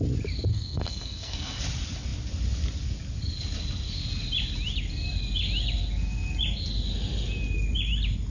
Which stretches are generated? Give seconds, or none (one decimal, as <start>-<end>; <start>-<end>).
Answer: 0.5-1.6